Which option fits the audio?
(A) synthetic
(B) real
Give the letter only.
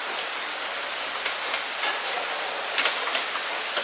B